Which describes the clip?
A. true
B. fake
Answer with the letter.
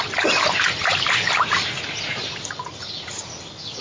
A